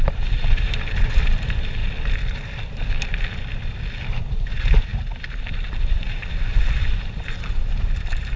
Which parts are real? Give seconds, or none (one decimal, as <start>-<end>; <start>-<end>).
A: 1.8-4.2; 4.9-5.4